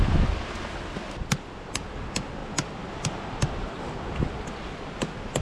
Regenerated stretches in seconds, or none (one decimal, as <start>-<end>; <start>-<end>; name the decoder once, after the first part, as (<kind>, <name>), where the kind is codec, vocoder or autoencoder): none

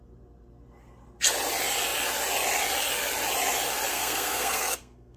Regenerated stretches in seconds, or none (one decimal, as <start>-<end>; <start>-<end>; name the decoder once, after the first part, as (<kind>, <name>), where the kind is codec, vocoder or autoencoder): 3.9-5.2 (codec, SNAC)